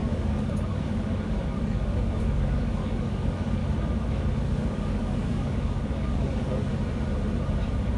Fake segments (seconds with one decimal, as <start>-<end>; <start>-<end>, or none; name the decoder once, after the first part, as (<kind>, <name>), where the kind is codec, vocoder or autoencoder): 0.0-3.6 (codec, DAC); 4.1-6.7